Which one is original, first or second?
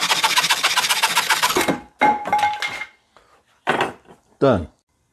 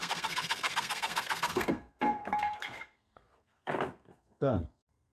first